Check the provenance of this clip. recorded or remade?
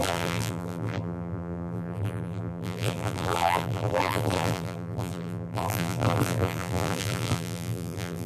remade